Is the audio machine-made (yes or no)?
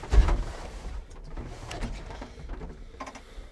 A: yes